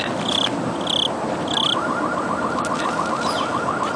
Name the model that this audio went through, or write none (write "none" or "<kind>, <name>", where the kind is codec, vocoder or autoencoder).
none